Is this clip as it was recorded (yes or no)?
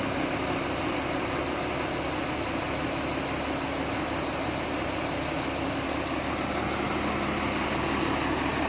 yes